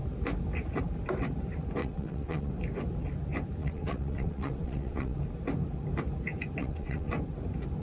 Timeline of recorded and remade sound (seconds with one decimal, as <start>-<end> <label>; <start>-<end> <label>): 0.0-1.8 recorded; 1.8-2.5 remade; 2.5-3.6 recorded; 3.6-5.2 remade; 5.2-6.6 recorded; 6.6-7.1 remade; 7.1-7.8 recorded